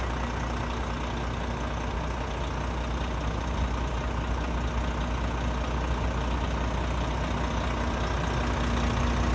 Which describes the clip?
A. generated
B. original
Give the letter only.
B